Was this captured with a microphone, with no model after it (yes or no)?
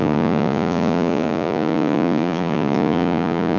no